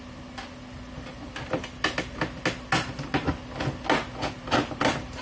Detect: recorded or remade recorded